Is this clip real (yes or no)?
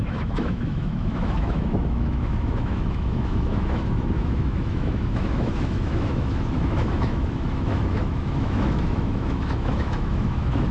no